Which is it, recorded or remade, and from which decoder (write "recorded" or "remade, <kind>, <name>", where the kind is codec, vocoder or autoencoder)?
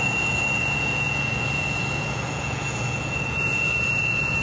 remade, vocoder, Vocos